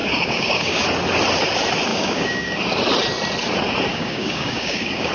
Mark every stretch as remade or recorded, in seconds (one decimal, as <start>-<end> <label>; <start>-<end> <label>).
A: 0.0-0.8 remade; 0.8-1.9 recorded; 1.9-2.6 remade; 2.6-3.9 recorded; 3.9-5.1 remade